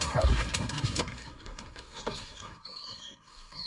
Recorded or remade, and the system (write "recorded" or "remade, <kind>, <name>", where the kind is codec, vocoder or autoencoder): remade, codec, SNAC